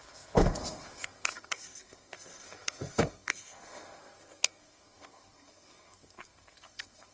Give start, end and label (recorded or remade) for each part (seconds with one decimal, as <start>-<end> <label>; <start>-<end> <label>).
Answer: 0.0-7.1 remade

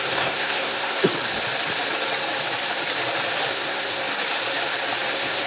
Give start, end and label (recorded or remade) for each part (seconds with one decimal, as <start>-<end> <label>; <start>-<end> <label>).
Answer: 0.0-1.0 remade; 1.0-3.5 recorded; 3.5-4.0 remade; 4.0-5.1 recorded; 5.1-5.5 remade